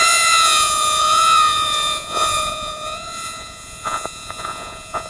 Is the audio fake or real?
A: fake